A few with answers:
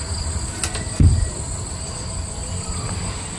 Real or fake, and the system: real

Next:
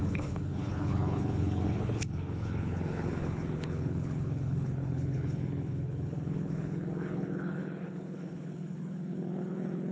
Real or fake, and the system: fake, codec, HILCodec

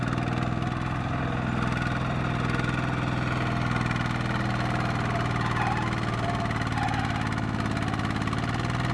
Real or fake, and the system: real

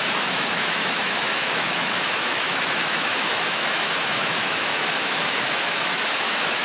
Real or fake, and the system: fake, autoencoder, DAC-VAE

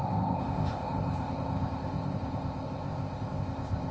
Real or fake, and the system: fake, codec, ZipCodec